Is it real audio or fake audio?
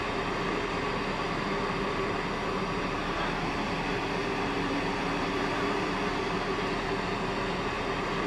real